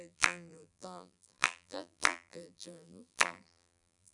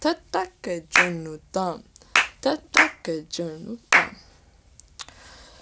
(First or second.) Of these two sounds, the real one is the second